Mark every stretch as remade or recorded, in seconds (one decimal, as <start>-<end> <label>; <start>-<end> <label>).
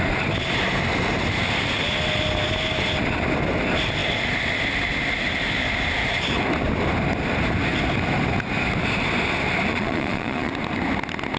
0.0-9.7 recorded; 9.7-10.5 remade; 10.5-11.4 recorded